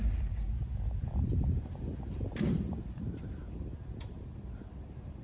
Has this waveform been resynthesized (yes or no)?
yes